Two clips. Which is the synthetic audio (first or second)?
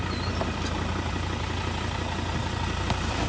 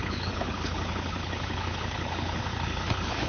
second